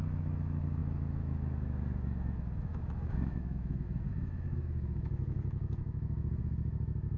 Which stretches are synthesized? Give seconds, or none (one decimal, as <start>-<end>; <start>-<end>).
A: 0.0-7.2